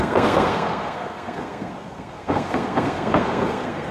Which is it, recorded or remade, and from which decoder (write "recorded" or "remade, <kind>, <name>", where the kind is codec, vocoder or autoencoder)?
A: remade, codec, SNAC